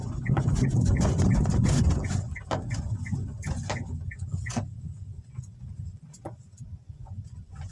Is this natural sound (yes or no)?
no